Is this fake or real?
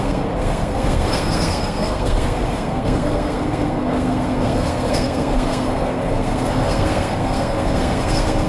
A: fake